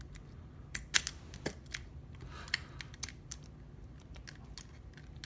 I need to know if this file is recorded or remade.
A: recorded